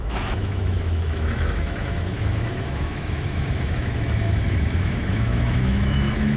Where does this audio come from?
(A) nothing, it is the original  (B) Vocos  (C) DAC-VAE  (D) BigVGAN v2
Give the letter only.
C